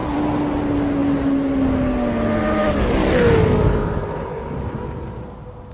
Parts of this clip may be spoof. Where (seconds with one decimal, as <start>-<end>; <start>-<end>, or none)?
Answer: none